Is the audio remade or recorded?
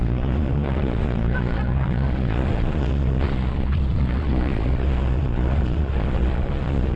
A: remade